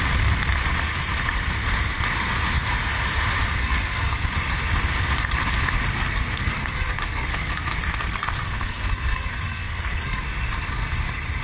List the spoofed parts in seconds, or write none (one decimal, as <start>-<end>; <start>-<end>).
3.6-4.2; 5.9-10.2